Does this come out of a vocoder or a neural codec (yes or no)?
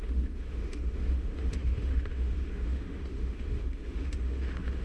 yes